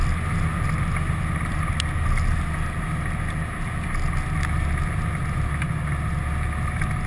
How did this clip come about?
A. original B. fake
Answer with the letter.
A